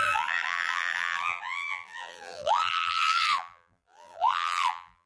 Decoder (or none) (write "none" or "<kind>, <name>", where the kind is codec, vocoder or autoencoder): vocoder, BigVGAN v2